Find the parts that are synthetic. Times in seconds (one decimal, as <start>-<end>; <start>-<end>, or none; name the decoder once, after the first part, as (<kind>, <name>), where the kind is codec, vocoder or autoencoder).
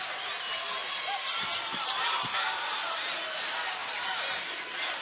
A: 0.8-3.3 (vocoder, BigVGAN v2)